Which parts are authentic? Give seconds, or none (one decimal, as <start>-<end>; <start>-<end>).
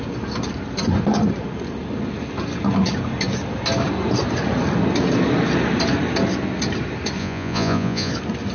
0.0-7.2; 8.1-8.5